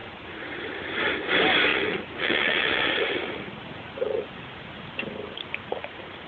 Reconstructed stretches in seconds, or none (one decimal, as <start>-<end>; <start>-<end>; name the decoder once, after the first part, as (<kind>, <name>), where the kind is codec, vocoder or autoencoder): 0.0-0.7 (vocoder, Vocos); 1.7-4.9; 5.7-6.3